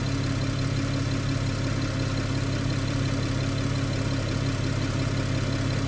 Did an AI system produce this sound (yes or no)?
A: no